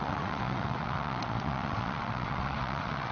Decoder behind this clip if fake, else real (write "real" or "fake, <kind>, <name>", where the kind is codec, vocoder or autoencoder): fake, vocoder, WaveNeXt